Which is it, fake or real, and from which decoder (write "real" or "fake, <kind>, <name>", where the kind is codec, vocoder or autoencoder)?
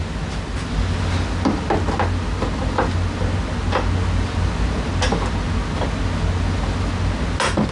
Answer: real